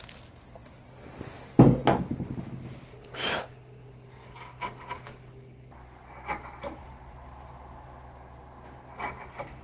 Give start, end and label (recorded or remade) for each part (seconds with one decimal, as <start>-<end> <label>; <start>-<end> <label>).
0.0-9.6 recorded